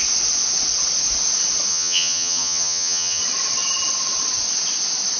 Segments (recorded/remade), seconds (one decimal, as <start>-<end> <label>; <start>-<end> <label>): 0.0-1.7 recorded; 1.7-3.2 remade; 3.2-5.2 recorded